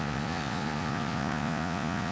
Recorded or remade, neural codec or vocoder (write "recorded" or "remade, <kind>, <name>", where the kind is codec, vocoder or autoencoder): remade, vocoder, Vocos